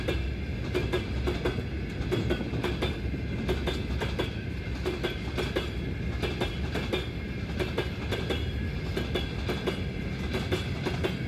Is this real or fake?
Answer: real